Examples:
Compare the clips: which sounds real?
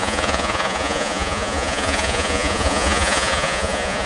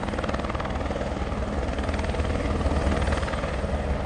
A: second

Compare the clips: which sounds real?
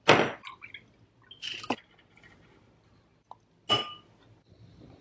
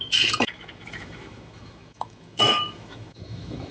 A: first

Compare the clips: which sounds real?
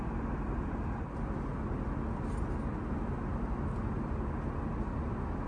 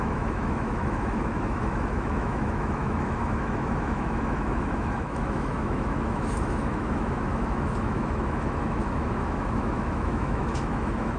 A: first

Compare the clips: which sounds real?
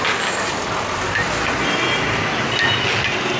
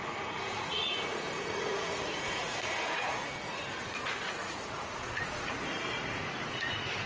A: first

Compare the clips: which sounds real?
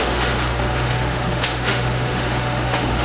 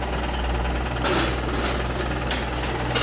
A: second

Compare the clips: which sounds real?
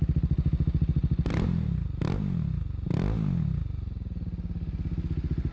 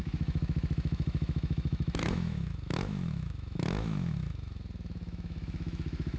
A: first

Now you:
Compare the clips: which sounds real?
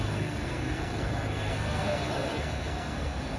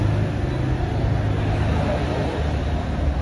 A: second